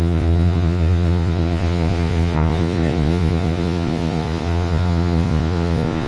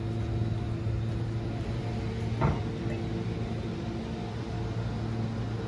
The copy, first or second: first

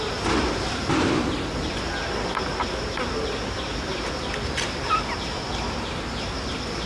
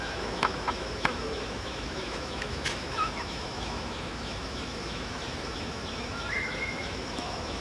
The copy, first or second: second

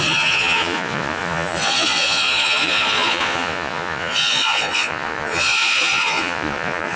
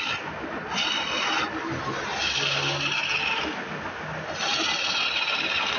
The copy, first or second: first